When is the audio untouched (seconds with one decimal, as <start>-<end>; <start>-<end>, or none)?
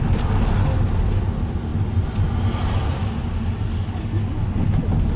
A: 0.0-5.2